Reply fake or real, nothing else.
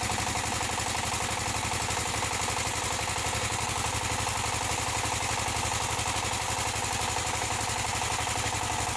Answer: real